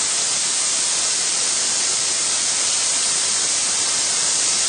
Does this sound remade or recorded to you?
remade